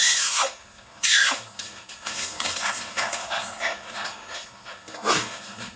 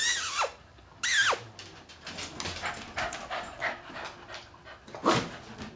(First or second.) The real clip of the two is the second